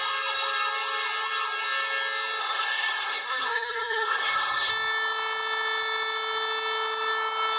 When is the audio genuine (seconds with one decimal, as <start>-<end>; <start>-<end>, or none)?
0.0-2.4; 4.7-7.6